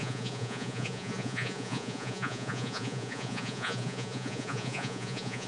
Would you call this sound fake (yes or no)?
yes